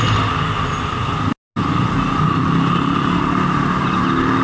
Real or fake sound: real